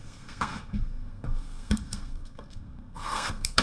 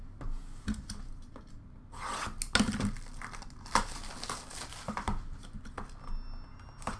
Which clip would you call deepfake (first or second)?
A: first